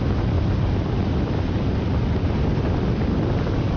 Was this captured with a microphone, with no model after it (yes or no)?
no